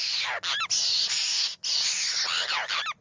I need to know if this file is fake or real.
real